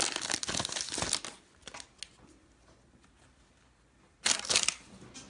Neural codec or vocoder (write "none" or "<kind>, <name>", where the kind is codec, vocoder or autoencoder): none